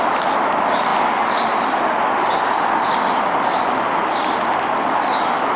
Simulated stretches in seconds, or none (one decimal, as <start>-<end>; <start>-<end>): none